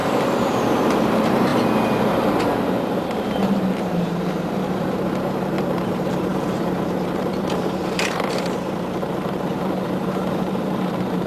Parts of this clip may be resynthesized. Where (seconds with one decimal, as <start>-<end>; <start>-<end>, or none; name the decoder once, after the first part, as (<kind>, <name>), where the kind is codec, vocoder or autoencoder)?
0.5-1.5 (vocoder, BigVGAN v2); 3.2-11.3